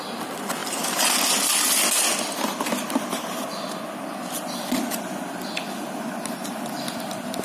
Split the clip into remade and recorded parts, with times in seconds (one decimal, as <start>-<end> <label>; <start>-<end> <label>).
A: 0.0-7.4 recorded